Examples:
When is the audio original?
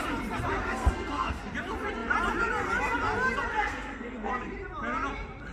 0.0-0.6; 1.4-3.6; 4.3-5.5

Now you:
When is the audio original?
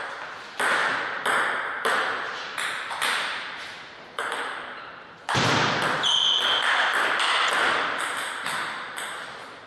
0.0-0.8; 5.6-9.7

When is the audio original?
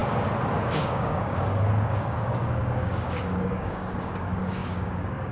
0.0-0.6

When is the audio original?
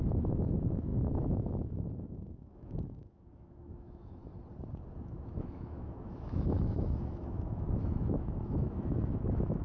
4.2-5.0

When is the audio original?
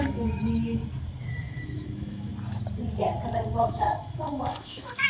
0.8-1.3; 2.3-3.6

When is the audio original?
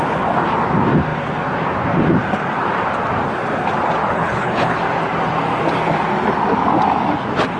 0.0-4.0; 4.8-7.6